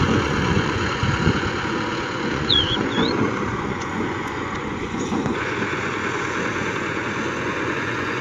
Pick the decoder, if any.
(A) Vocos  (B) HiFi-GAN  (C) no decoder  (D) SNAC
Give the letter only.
A